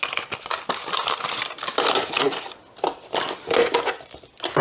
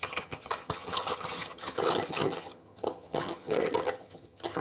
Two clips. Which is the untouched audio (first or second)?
first